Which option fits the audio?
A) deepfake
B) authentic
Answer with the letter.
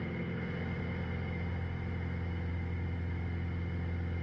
B